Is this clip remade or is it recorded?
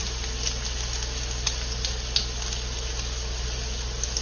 recorded